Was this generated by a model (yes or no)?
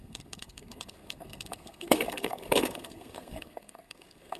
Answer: yes